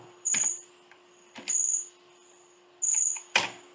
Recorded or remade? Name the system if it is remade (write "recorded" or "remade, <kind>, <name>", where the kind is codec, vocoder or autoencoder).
recorded